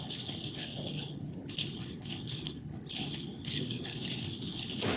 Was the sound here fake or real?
fake